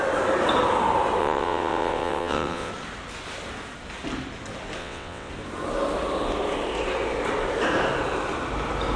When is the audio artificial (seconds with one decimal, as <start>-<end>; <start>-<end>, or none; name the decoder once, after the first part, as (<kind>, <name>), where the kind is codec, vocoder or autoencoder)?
1.2-2.7 (vocoder, WaveNeXt); 4.8-5.3